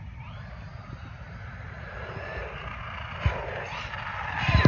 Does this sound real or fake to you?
real